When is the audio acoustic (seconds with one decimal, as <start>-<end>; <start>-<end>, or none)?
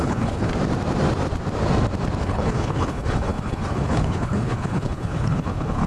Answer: 0.5-2.2